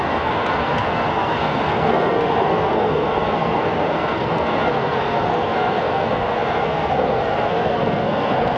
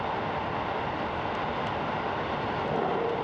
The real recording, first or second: second